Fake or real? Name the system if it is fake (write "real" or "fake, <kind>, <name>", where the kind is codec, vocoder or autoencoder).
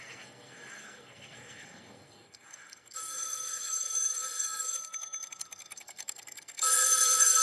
fake, codec, SNAC